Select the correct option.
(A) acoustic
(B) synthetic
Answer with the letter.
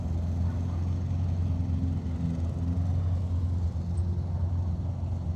A